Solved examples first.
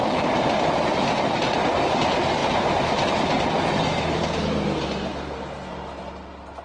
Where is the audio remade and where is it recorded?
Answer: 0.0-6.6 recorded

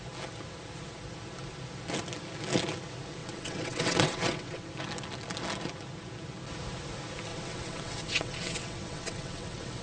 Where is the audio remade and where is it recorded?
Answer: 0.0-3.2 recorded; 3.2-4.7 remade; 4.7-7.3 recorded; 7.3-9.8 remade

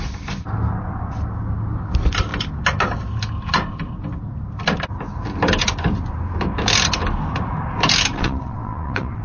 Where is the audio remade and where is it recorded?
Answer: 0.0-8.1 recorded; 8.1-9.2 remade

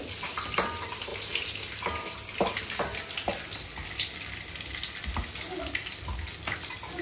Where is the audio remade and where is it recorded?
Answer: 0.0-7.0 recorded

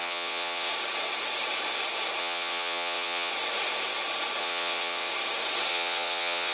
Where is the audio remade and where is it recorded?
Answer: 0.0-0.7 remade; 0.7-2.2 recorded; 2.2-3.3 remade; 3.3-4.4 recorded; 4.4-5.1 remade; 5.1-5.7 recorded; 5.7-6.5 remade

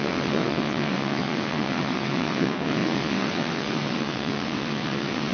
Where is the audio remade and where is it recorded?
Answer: 0.0-5.3 remade